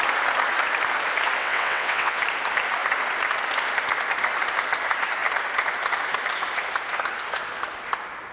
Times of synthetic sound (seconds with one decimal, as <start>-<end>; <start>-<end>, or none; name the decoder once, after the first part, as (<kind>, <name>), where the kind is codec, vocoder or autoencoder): 1.4-2.2 (vocoder, WaveNeXt)